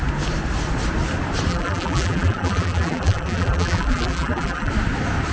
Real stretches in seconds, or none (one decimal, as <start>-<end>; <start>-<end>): 0.0-1.5; 4.7-5.3